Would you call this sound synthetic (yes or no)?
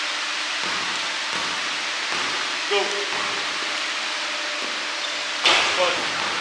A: no